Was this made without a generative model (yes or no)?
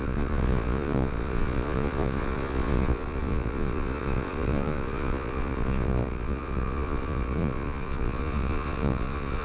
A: no